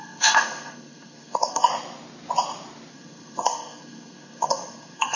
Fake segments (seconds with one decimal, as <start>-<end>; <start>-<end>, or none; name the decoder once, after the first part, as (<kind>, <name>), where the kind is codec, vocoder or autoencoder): 0.0-1.7 (codec, SNAC); 2.9-5.2